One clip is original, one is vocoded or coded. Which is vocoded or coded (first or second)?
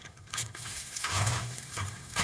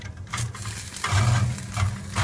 first